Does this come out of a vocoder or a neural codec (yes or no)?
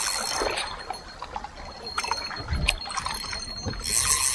no